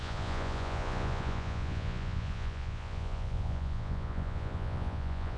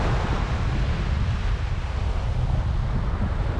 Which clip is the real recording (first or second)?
second